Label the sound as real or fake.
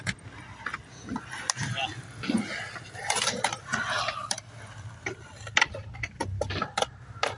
real